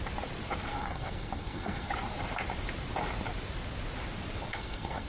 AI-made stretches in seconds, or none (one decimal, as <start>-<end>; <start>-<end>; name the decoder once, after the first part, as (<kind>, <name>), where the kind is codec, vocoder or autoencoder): 0.7-1.9 (codec, SNAC); 4.5-5.1